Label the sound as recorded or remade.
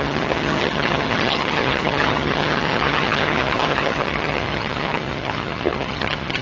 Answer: remade